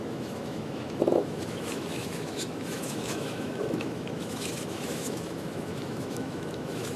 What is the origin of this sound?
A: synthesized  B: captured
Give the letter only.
A